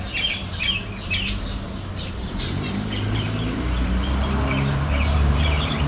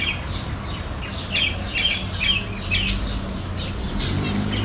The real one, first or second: second